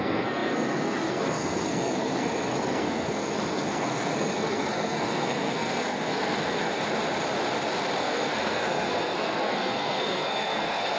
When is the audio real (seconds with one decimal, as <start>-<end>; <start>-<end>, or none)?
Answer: 6.8-8.0

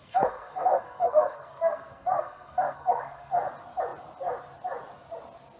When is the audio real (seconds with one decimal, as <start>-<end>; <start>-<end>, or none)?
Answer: 3.4-5.6

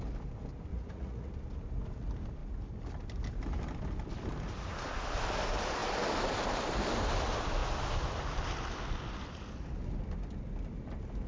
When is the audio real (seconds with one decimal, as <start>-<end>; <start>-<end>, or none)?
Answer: 0.0-0.7; 1.3-11.3

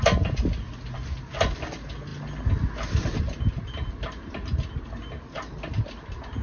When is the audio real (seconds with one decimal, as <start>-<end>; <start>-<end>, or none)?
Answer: 0.0-6.4